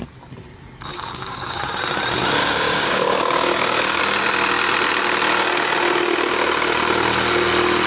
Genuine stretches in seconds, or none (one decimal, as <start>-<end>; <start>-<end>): 0.0-0.9; 1.6-2.4; 4.0-7.9